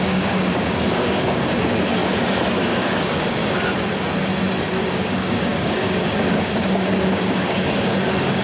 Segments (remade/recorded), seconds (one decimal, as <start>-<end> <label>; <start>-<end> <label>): 0.0-2.0 remade; 2.0-2.5 recorded; 2.5-3.4 remade; 3.4-4.8 recorded; 4.8-8.4 remade